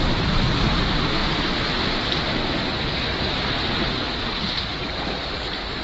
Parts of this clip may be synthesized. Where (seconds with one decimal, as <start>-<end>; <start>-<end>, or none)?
0.0-1.2; 2.3-5.8